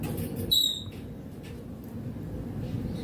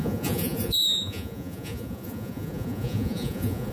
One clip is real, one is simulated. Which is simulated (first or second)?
second